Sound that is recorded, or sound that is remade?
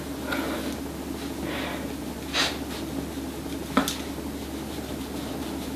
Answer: recorded